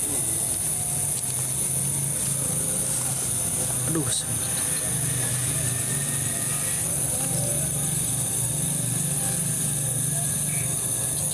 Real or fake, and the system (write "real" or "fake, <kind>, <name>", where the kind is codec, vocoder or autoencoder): real